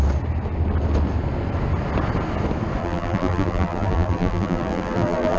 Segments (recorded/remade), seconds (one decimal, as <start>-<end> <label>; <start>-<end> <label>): 0.0-2.8 recorded; 2.8-5.4 remade